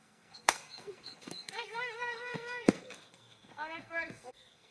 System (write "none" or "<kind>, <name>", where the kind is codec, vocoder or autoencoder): codec, SNAC